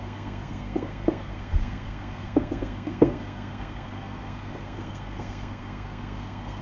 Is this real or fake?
fake